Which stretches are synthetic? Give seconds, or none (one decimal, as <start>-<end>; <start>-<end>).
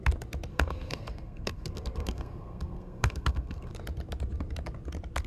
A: 0.5-3.7